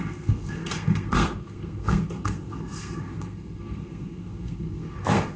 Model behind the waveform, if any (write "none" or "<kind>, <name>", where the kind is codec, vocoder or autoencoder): codec, SNAC